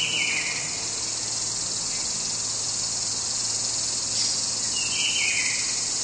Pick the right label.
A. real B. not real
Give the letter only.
A